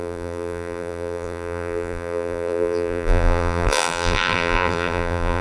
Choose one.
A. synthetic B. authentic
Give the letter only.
A